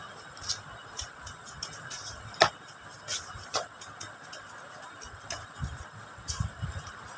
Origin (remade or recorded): recorded